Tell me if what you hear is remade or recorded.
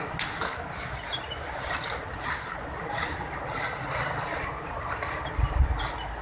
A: recorded